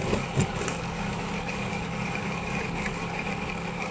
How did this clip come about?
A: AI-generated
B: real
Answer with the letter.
A